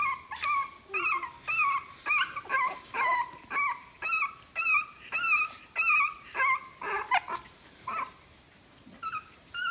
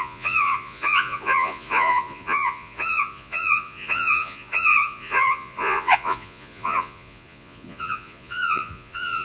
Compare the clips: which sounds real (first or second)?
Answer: first